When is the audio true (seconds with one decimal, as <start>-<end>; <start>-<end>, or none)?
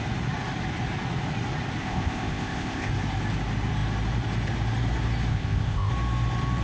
0.0-1.8; 2.9-5.3; 5.9-6.6